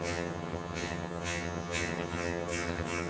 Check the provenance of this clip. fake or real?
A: fake